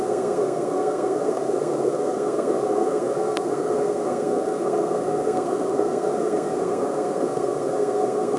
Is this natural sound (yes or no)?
no